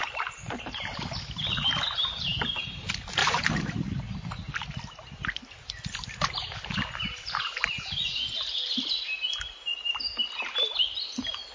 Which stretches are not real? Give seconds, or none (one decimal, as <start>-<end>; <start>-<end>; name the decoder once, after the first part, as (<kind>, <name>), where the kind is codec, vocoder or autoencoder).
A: 0.0-2.4 (vocoder, BigVGAN v2); 3.2-4.0